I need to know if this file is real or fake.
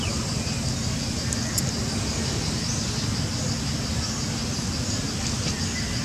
real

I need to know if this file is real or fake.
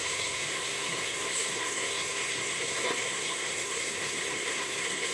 fake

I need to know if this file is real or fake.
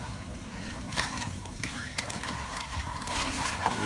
fake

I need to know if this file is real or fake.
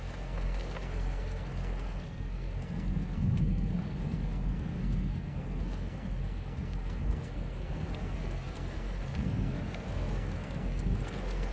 fake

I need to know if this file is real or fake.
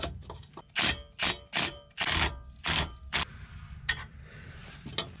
real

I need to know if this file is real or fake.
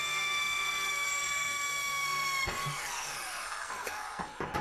fake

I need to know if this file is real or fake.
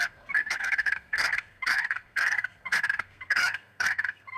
fake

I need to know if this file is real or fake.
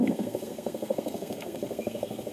fake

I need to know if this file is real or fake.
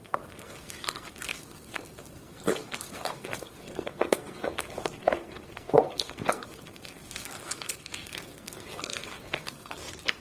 fake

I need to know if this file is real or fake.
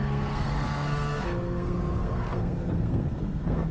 fake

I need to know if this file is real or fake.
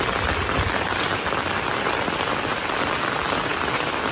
real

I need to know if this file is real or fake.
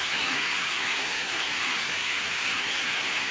fake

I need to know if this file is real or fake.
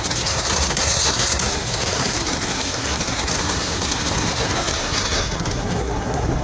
fake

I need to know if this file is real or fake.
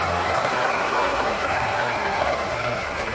fake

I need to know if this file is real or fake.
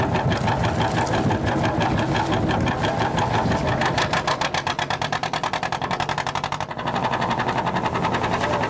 real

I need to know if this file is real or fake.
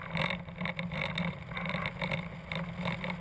real